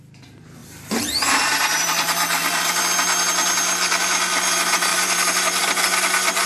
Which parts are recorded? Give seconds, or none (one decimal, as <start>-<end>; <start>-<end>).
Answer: 0.0-0.6; 2.8-4.9; 5.6-6.5